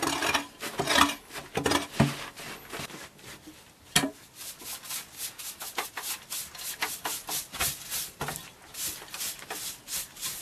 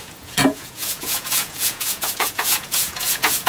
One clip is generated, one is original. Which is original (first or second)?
first